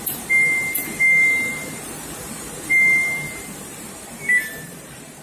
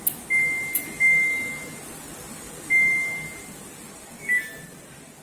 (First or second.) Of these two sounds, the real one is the second